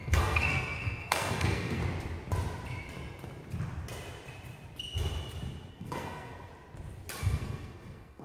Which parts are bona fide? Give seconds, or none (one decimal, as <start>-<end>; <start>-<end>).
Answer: 1.8-5.7; 6.5-7.2